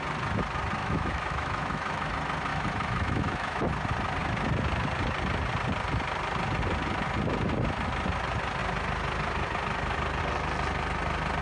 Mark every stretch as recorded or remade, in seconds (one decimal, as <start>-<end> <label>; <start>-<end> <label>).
0.0-0.8 recorded; 0.8-2.1 remade; 2.1-2.5 recorded; 2.5-3.7 remade; 3.7-11.4 recorded